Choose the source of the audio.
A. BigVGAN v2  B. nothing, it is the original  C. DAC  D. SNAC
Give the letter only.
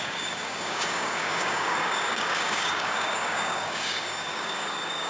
C